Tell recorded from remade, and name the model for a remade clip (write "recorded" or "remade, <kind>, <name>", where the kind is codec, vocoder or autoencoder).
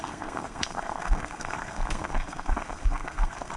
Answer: remade, codec, SNAC